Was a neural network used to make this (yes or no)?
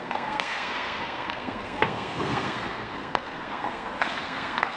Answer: yes